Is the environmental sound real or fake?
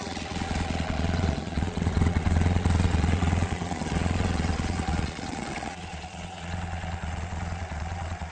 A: fake